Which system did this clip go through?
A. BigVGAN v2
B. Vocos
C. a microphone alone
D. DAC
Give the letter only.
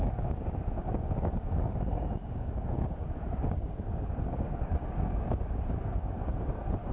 D